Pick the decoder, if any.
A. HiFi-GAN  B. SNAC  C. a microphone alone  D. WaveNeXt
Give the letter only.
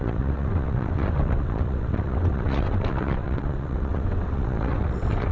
D